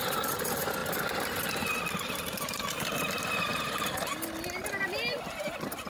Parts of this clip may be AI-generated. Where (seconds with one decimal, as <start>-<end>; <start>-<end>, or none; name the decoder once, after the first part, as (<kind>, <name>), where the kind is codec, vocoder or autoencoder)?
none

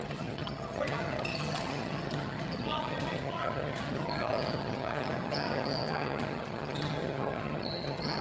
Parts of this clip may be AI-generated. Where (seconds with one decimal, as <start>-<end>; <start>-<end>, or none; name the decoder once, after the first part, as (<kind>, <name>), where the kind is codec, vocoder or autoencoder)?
0.0-8.2 (vocoder, HiFi-GAN)

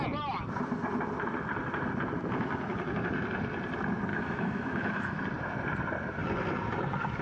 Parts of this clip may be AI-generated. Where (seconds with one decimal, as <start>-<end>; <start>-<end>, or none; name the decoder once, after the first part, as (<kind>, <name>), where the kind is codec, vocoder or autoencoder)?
4.1-5.2 (autoencoder, DAC-VAE)